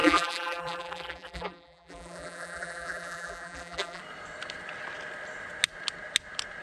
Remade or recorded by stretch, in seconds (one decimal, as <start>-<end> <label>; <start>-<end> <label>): 0.0-4.0 remade; 4.0-6.6 recorded